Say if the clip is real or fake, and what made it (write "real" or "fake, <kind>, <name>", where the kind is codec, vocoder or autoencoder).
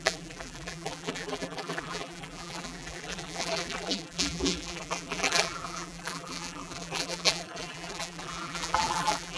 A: fake, vocoder, BigVGAN v2